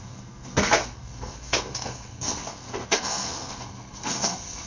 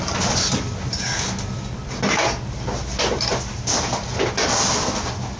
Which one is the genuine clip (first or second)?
second